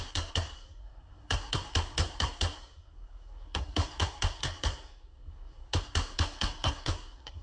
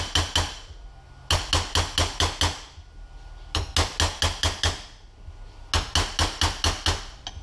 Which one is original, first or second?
second